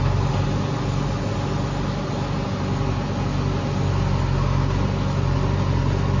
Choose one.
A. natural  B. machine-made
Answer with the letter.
A